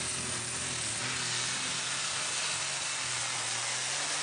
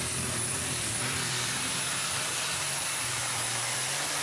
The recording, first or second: first